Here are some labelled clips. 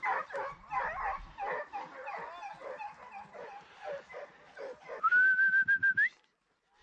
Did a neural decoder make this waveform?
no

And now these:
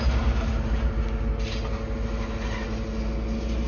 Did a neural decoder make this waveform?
no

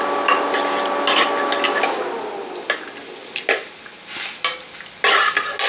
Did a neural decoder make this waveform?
no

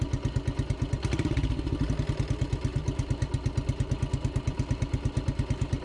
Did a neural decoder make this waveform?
no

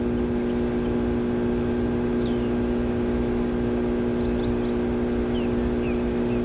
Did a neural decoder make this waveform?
no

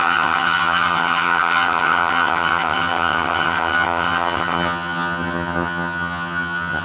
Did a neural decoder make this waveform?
yes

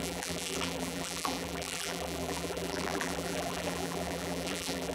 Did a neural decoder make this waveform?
yes